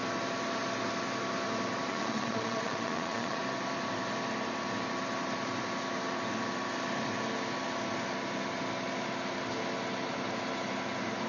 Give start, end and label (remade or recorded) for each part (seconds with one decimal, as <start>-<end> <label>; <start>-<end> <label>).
0.0-1.9 recorded; 1.9-3.4 remade; 3.4-11.3 recorded